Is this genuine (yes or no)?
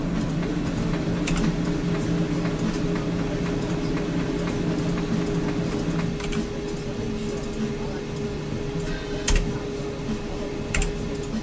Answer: yes